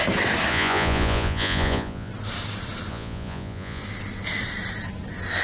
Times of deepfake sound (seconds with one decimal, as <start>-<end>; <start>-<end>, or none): 0.5-2.1; 2.9-3.8